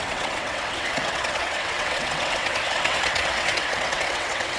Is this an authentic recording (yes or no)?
no